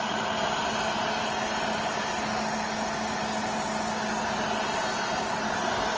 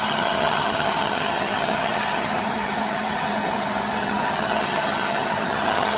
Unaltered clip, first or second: first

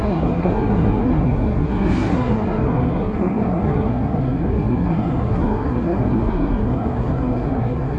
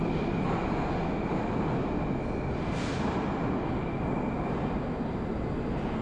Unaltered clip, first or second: second